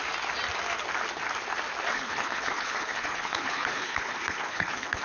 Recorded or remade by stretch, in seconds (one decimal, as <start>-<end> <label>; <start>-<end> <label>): 0.0-1.9 recorded; 1.9-5.0 remade

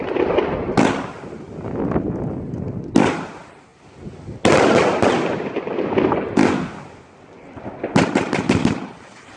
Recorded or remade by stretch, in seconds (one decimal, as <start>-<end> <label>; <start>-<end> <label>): 0.0-9.4 recorded

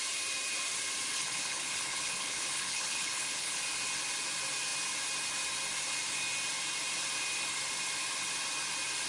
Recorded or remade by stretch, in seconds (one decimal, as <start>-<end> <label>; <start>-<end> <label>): 0.0-1.1 recorded; 1.1-3.6 remade; 3.6-9.1 recorded

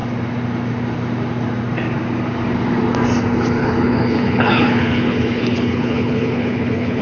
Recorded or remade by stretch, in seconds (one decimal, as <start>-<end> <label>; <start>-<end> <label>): 0.0-3.6 recorded; 3.6-7.0 remade

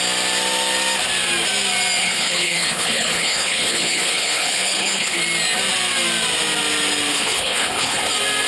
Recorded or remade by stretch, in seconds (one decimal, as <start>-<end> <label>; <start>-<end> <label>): 0.0-2.0 recorded; 2.0-5.2 remade; 5.2-7.1 recorded; 7.1-8.0 remade; 8.0-8.5 recorded

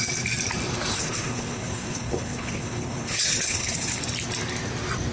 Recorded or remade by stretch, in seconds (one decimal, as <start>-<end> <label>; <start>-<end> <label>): 0.0-0.9 recorded; 0.9-4.0 remade; 4.0-5.1 recorded

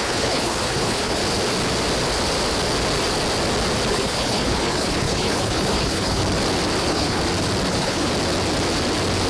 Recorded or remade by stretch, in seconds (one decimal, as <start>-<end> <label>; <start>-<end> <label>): 0.0-1.2 remade; 1.2-3.9 recorded; 3.9-6.2 remade; 6.2-6.8 recorded; 6.8-7.2 remade; 7.2-7.7 recorded; 7.7-8.1 remade; 8.1-9.3 recorded

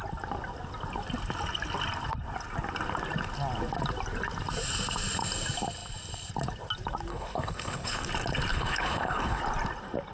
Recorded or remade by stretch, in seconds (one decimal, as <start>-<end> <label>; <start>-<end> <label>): 0.0-7.1 recorded; 7.1-8.1 remade; 8.1-8.5 recorded; 8.5-9.4 remade; 9.4-10.1 recorded